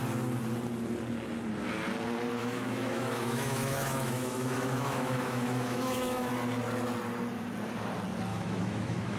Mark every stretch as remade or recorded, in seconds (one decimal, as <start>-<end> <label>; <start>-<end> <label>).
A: 0.0-2.4 recorded; 2.4-6.3 remade; 6.3-8.3 recorded; 8.3-9.2 remade